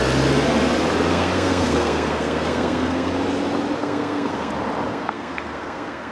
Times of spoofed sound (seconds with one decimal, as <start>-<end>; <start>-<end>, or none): 1.1-3.1; 3.8-4.5; 4.9-6.1